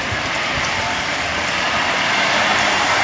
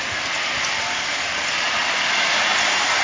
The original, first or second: second